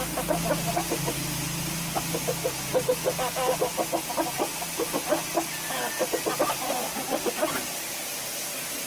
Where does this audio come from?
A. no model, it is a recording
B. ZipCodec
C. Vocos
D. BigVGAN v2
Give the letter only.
A